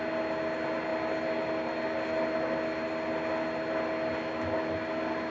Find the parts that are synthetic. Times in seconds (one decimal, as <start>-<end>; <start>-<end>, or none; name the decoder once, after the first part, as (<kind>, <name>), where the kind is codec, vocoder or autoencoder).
none